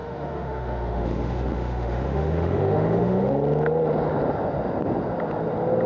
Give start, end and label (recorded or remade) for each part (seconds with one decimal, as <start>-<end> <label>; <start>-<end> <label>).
0.0-3.3 remade; 3.3-5.9 recorded